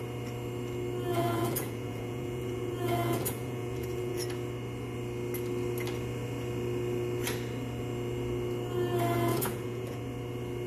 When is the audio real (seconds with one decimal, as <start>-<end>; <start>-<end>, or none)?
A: 0.0-1.1; 4.2-9.3; 10.0-10.7